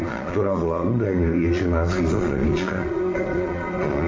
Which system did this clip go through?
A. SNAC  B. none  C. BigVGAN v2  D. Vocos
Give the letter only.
D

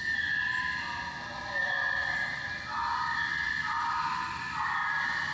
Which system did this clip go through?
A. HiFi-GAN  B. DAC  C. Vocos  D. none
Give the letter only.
D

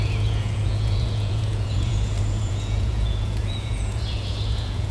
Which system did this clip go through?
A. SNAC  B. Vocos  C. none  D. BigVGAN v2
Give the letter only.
B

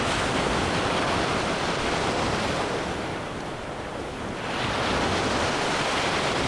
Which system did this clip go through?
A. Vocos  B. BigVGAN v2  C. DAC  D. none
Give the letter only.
D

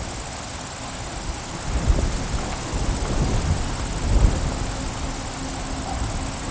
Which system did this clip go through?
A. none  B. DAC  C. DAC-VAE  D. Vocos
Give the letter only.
A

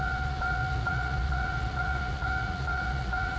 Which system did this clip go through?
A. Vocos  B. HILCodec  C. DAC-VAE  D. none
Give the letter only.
A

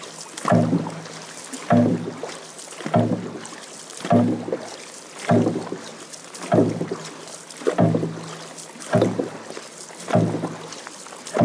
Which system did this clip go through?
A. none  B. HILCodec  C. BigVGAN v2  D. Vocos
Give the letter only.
A